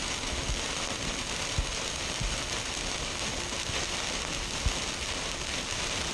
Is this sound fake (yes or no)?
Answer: no